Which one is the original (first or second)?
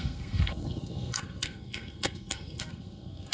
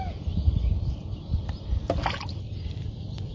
second